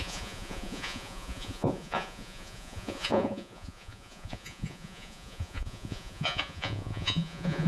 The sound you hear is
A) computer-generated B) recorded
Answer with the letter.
A